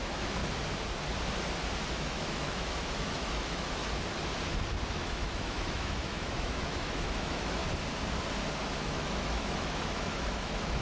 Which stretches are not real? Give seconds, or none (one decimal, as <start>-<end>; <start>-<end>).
0.0-0.4; 1.9-3.8; 4.9-7.6; 8.8-10.8